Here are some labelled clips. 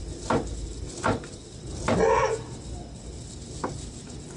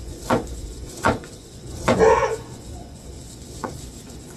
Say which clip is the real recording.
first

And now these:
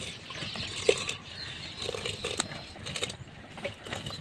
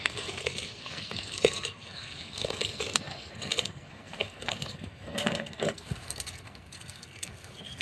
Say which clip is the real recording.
first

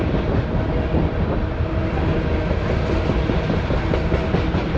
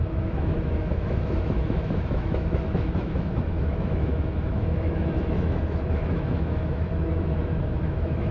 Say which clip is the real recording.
first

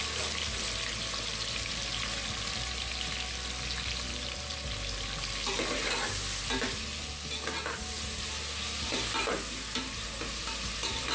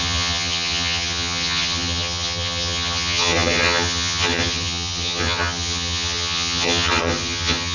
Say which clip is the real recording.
first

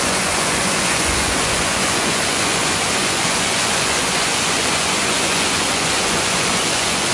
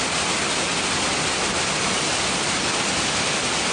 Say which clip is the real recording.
second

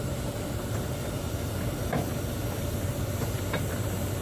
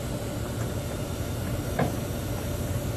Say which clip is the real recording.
second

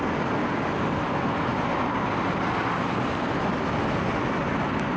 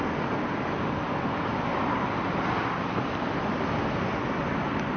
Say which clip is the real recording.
first